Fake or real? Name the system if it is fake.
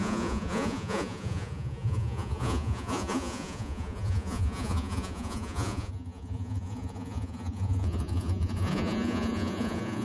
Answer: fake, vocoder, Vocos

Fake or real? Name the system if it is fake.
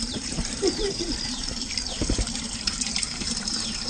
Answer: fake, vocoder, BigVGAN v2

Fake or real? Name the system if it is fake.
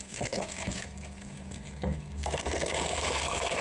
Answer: fake, codec, SNAC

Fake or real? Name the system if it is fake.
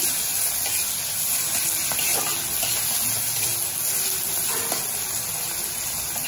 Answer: real